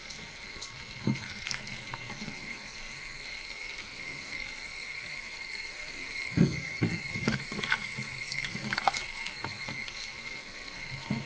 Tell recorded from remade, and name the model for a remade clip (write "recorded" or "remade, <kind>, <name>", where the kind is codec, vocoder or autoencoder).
remade, codec, SNAC